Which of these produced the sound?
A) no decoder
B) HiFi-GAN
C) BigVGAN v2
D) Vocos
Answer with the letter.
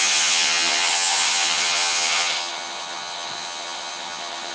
B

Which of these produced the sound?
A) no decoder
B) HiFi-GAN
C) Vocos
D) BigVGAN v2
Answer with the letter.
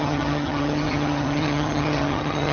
B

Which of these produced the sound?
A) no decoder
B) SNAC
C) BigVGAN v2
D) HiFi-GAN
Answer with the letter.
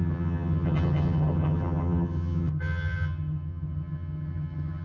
D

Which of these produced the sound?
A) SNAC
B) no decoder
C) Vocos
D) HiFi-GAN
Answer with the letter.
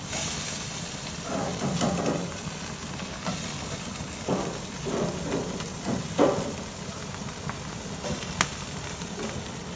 B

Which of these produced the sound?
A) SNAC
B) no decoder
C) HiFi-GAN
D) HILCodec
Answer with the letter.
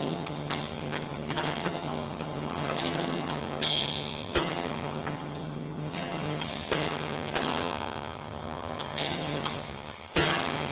C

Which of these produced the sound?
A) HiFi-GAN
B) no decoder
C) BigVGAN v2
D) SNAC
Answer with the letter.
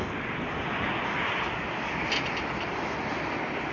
B